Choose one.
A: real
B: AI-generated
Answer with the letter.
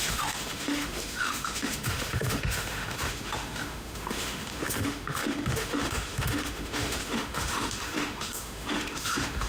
B